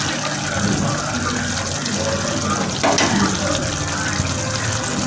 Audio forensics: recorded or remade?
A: recorded